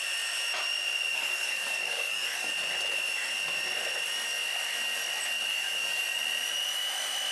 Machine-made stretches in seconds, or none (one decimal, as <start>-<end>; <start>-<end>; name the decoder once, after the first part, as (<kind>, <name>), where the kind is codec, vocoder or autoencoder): 1.1-2.5 (codec, DAC); 5.5-6.0